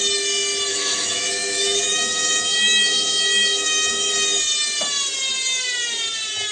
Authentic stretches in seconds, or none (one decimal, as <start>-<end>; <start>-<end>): 0.0-0.7; 4.1-6.5

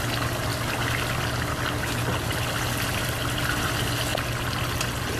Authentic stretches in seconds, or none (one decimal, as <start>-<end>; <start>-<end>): 0.0-5.2

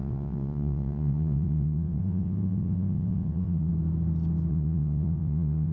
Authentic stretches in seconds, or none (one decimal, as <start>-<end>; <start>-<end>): 3.7-4.5

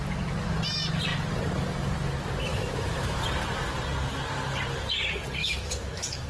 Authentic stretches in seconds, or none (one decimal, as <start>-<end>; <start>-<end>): 0.0-2.5; 3.2-5.4

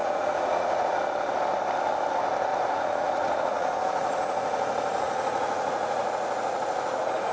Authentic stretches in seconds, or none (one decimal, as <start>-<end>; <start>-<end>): 1.0-2.5

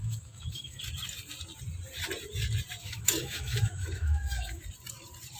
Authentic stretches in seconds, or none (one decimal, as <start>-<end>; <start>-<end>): 0.8-2.8; 4.6-5.4

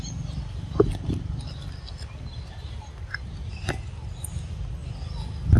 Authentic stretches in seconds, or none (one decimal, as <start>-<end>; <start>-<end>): 0.0-5.6

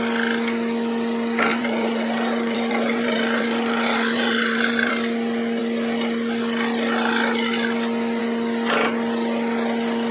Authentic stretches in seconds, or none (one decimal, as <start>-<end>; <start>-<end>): 0.0-1.5; 4.9-10.1